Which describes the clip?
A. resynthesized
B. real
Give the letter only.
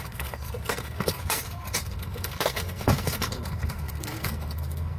A